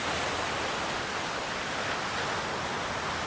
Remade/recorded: recorded